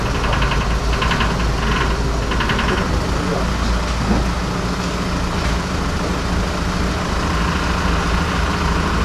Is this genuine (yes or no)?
yes